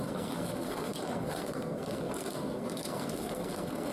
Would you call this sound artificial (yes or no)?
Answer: yes